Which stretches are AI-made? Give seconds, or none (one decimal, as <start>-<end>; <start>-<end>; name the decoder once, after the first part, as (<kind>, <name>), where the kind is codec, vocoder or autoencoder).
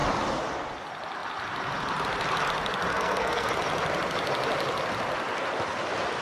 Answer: 2.9-3.5 (codec, SNAC)